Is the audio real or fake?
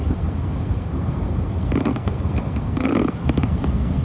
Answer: fake